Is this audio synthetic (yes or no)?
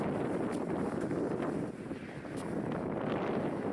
no